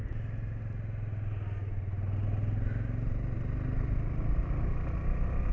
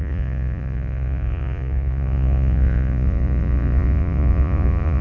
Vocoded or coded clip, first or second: second